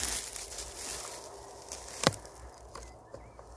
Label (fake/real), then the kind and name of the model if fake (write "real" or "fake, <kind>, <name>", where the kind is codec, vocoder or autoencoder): real